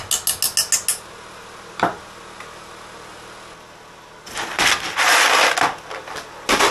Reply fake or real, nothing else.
real